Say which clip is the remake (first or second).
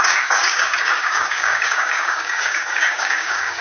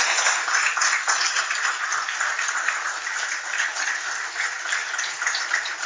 first